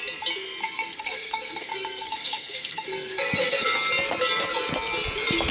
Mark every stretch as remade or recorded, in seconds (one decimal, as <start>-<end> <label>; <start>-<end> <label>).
0.0-0.6 recorded; 0.6-3.9 remade; 3.9-5.5 recorded